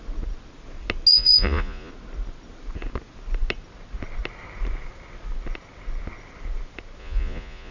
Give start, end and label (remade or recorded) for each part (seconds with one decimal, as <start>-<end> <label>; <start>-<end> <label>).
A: 0.0-1.1 recorded; 1.1-1.9 remade; 1.9-7.0 recorded; 7.0-7.7 remade